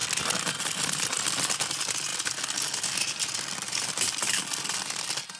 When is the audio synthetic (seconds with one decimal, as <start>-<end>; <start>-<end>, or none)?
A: none